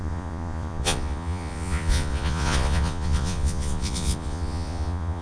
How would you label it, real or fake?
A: fake